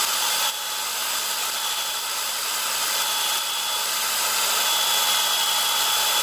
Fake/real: real